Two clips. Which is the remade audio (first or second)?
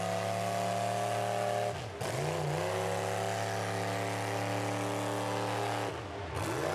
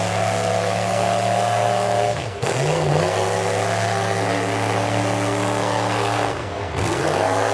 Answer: second